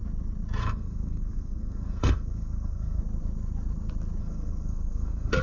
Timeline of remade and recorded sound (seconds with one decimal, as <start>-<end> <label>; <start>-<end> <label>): 0.0-0.6 recorded; 0.6-3.0 remade; 3.0-4.2 recorded; 4.2-5.4 remade